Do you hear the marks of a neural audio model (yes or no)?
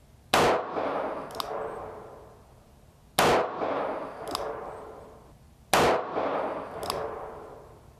no